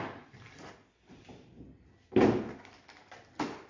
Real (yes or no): yes